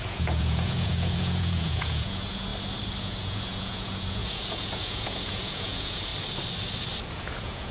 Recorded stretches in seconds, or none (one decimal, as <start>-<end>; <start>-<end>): 2.5-3.0; 6.1-7.1